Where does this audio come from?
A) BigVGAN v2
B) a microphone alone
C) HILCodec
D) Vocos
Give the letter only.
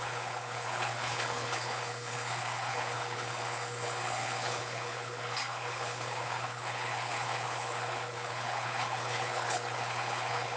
C